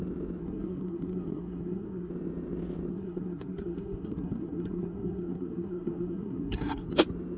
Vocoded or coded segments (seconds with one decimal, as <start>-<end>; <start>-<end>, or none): 0.4-2.1; 2.9-6.9

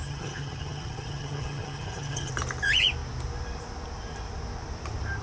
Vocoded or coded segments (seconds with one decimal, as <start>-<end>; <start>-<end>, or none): 0.0-2.3

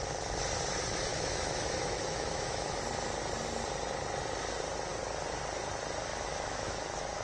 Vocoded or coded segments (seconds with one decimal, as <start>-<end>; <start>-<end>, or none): 1.1-2.8; 6.1-7.2

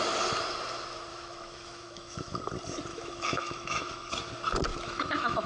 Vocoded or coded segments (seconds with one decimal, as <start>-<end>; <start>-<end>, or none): 1.1-2.4; 2.9-4.1; 4.7-5.5

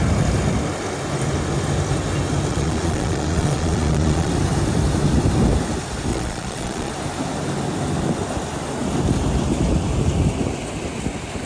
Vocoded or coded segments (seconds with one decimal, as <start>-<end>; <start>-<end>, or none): 2.5-4.3; 6.1-6.9

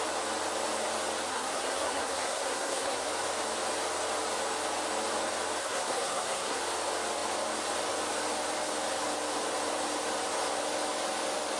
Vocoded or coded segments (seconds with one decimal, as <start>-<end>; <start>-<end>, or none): 1.3-3.1; 5.6-6.6

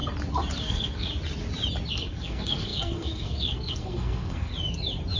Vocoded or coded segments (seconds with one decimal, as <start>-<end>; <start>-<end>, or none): 0.6-1.1; 1.9-4.5